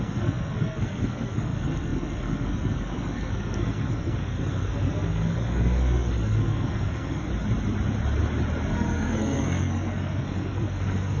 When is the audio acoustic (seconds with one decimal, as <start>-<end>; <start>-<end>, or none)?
7.3-8.7